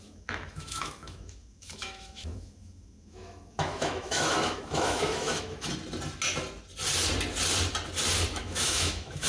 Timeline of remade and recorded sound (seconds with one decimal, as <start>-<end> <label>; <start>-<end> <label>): 0.0-5.7 remade; 5.7-8.3 recorded; 8.3-9.3 remade

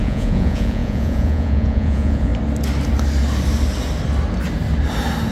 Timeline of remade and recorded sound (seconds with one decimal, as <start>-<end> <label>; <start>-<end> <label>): 0.0-2.3 remade; 2.3-5.3 recorded

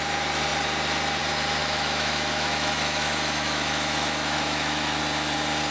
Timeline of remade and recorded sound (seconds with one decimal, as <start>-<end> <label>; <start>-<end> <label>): 0.0-1.6 recorded; 1.6-5.0 remade; 5.0-5.7 recorded

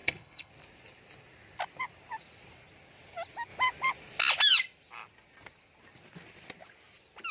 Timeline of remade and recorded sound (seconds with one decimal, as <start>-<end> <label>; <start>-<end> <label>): 0.0-0.5 remade; 0.5-7.3 recorded